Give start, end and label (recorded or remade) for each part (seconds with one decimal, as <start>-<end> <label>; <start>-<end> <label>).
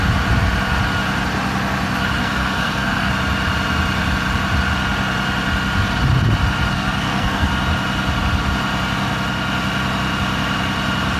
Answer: 0.0-2.2 recorded; 2.2-3.1 remade; 3.1-6.7 recorded; 6.7-7.5 remade; 7.5-11.2 recorded